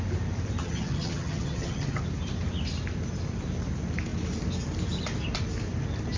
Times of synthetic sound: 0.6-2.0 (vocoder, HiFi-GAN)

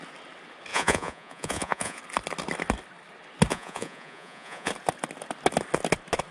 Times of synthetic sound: 0.7-2.0 (vocoder, Vocos); 3.5-4.7